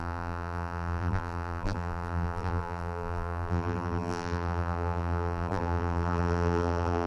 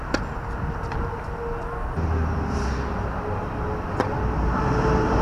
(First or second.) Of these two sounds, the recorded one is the second